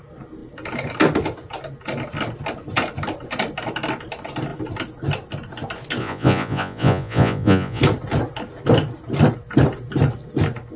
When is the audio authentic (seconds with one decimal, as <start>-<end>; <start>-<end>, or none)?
0.0-6.0; 7.8-10.8